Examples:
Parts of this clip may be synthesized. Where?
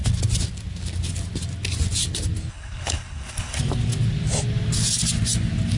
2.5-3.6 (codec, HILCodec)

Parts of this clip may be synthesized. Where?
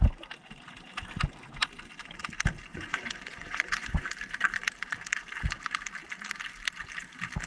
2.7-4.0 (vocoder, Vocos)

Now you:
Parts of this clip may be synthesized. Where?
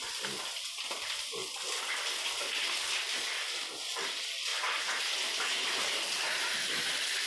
none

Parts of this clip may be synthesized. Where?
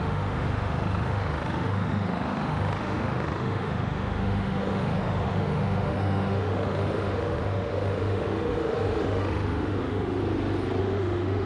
0.0-10.2 (autoencoder, DAC-VAE); 10.8-11.5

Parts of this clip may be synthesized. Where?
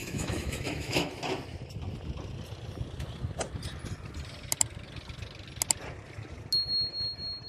0.0-1.1 (autoencoder, DAC-VAE)